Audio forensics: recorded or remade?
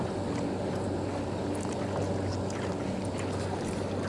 recorded